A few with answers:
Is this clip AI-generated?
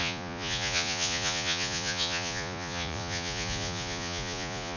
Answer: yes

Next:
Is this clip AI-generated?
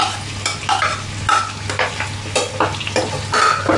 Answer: no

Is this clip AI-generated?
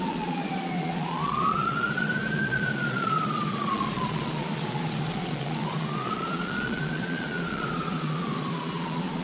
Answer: yes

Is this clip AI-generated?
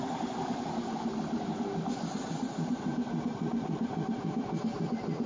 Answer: no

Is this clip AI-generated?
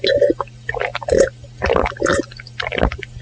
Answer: no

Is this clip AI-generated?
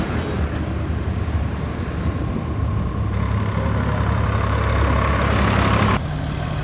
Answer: no